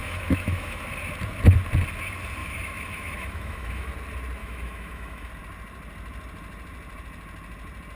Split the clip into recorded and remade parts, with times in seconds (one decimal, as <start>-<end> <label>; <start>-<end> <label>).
0.0-0.8 remade; 0.8-2.4 recorded; 2.4-3.9 remade; 3.9-4.4 recorded; 4.4-5.3 remade; 5.3-8.0 recorded